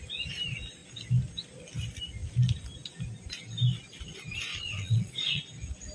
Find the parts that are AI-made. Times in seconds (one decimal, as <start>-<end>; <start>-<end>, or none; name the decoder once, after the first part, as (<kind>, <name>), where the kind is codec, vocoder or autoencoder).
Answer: 4.5-5.4 (vocoder, Vocos)